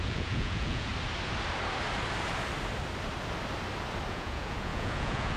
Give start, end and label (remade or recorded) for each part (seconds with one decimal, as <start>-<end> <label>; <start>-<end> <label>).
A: 0.0-0.9 remade; 0.9-4.1 recorded; 4.1-5.4 remade